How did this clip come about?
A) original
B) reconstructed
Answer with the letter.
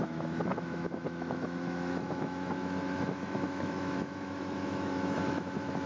B